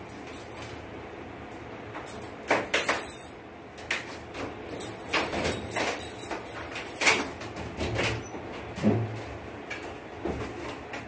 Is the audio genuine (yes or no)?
yes